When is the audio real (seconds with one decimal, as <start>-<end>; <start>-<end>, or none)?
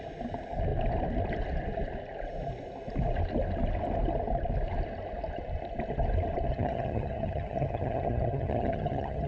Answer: 0.0-6.5